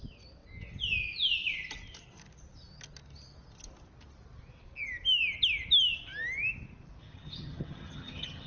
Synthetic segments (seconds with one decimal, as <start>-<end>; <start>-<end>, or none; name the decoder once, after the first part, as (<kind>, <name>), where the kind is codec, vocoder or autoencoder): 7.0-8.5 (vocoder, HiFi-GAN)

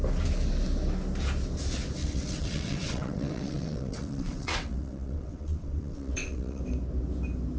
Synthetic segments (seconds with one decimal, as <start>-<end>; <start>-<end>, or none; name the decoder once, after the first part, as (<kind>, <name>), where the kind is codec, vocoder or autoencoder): 2.0-6.6 (vocoder, WaveNeXt)

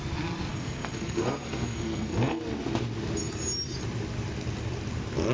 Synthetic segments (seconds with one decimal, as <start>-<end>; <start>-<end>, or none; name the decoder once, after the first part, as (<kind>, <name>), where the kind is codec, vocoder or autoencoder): 0.5-2.4 (codec, SNAC)